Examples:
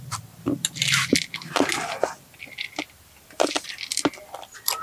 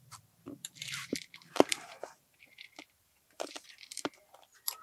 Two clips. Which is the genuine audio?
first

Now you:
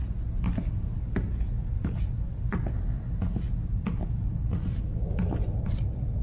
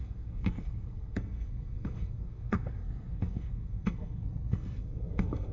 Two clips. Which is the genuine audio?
first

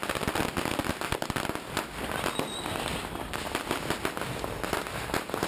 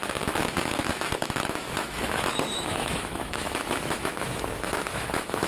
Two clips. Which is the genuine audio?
first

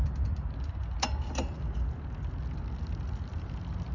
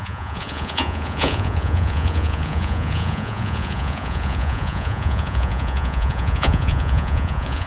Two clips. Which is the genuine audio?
first